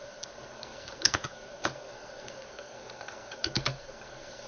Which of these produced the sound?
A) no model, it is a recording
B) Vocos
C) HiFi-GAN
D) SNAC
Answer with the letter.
D